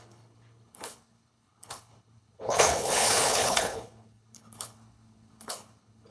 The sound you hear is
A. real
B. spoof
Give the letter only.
B